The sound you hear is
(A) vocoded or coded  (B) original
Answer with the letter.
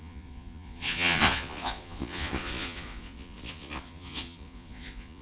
A